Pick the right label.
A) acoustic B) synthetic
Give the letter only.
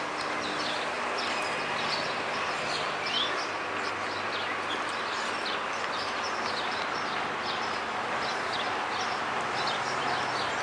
A